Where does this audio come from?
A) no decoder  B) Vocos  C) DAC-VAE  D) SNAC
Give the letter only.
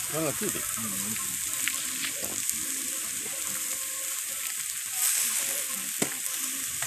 A